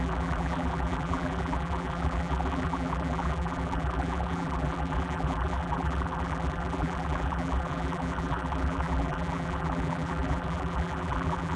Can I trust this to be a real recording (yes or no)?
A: no